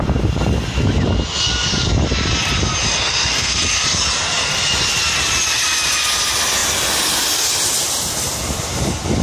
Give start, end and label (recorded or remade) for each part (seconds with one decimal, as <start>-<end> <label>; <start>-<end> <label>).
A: 0.0-3.0 recorded; 3.0-3.6 remade; 3.6-9.2 recorded